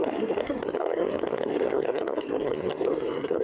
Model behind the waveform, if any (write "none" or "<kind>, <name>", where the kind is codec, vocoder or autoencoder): codec, SNAC